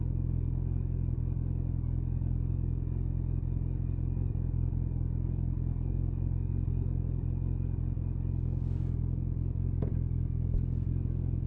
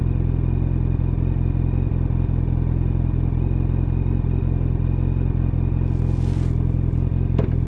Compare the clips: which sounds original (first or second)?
second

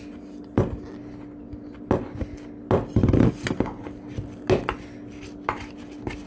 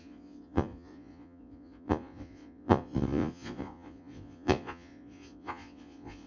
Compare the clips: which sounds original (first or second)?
first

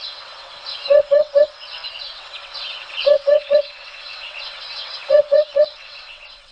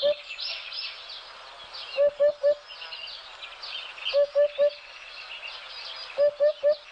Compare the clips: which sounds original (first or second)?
second